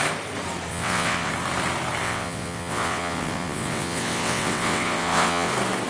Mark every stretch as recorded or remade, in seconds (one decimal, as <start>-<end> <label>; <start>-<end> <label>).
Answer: 0.0-0.7 recorded; 0.7-1.3 remade; 1.3-2.0 recorded; 2.0-5.5 remade; 5.5-5.9 recorded